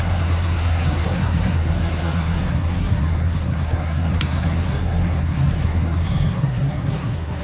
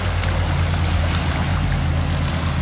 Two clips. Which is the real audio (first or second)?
second